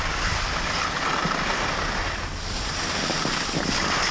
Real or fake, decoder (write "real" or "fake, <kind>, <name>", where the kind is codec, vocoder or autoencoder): real